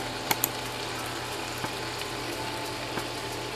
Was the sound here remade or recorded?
remade